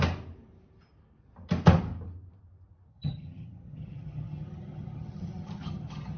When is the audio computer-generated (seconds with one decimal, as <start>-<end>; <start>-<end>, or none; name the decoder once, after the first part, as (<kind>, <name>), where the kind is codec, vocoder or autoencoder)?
2.9-6.2 (vocoder, HiFi-GAN)